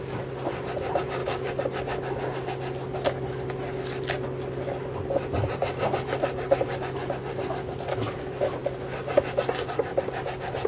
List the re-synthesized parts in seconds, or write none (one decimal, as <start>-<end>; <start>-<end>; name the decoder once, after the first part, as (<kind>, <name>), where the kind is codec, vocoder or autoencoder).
none